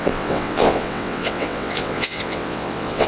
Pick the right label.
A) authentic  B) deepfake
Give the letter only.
B